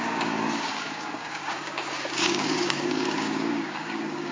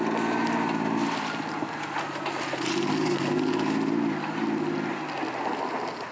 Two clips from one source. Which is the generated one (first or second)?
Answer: first